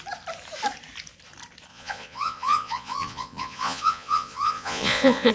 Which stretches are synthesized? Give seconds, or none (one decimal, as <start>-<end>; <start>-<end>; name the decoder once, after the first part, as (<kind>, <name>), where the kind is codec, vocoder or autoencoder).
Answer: 1.7-5.3 (vocoder, Vocos)